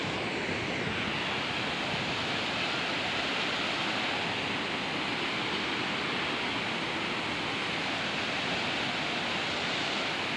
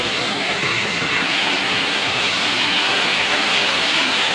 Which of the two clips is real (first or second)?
first